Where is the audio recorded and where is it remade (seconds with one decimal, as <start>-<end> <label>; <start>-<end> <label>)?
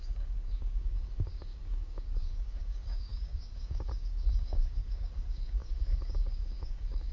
0.0-7.1 remade